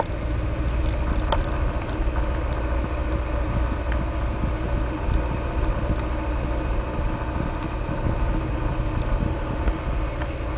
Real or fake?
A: real